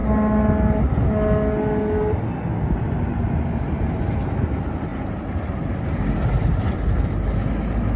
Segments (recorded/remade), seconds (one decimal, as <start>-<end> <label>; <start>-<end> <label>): 0.0-8.0 recorded